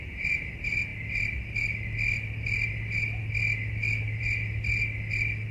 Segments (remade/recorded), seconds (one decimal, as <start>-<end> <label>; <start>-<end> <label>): 0.0-5.5 recorded

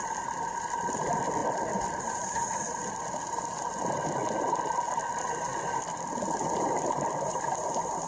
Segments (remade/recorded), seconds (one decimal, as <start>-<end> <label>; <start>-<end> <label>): 0.0-4.2 remade; 4.2-8.1 recorded

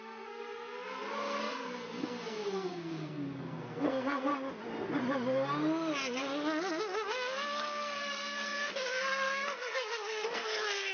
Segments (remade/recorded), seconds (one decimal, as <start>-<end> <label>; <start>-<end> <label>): 0.0-4.3 remade; 4.3-6.8 recorded; 6.8-10.9 remade

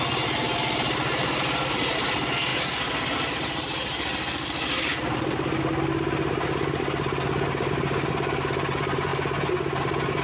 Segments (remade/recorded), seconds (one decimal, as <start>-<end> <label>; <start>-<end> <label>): 0.0-10.2 recorded

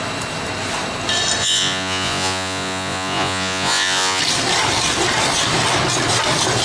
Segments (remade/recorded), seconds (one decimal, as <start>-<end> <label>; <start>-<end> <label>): 0.0-1.4 recorded; 1.4-4.2 remade; 4.2-6.6 recorded

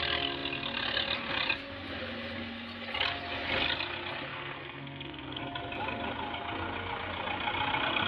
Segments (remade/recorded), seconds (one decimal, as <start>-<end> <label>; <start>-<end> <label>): 0.0-4.3 recorded; 4.3-5.4 remade; 5.4-8.1 recorded

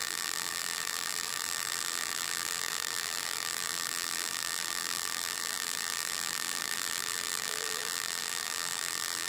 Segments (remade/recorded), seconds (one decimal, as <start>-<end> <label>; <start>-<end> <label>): 0.0-9.3 remade

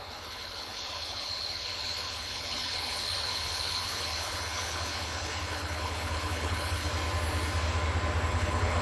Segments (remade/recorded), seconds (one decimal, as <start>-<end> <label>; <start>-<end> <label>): 0.0-6.9 remade; 6.9-8.3 recorded; 8.3-8.8 remade